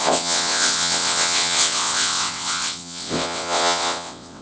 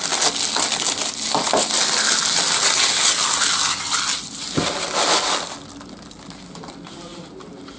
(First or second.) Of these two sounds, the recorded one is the second